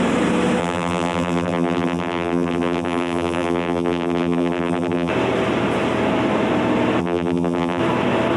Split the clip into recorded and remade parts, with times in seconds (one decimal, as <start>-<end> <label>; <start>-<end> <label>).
0.0-0.6 recorded; 0.6-5.1 remade; 5.1-7.0 recorded; 7.0-7.8 remade; 7.8-8.4 recorded